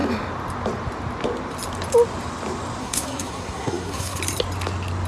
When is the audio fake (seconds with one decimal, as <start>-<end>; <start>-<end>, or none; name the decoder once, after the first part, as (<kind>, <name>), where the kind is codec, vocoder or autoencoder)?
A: 2.8-4.2 (codec, SNAC)